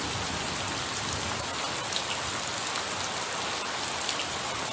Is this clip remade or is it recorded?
recorded